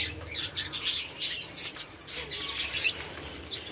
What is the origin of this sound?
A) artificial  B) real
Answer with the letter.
B